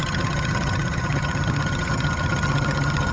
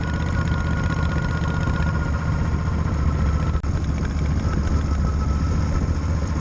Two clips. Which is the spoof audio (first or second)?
first